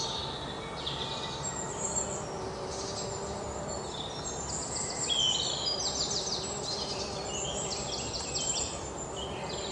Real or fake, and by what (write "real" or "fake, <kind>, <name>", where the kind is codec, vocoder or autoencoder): real